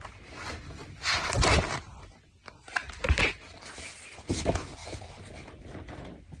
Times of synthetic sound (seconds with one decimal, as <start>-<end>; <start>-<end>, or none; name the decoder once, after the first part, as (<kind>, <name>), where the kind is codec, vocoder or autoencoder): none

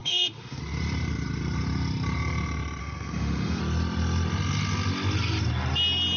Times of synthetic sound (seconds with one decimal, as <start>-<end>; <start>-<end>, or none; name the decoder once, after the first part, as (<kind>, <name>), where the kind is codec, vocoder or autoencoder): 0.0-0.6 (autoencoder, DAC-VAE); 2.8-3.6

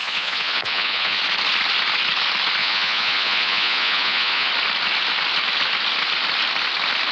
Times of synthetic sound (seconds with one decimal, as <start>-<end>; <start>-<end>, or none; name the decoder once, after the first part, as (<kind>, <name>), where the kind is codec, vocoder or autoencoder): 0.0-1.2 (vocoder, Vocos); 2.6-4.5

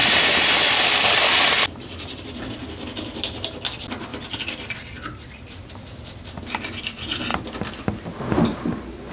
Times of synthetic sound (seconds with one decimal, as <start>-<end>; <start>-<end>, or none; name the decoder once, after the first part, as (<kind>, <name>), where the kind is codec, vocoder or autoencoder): 0.0-2.4 (vocoder, BigVGAN v2); 4.1-5.7; 7.3-8.2

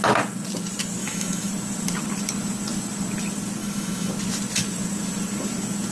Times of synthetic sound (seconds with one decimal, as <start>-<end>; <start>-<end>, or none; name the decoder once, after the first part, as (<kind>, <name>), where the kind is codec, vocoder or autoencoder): 1.0-1.5 (autoencoder, DAC-VAE); 3.6-4.1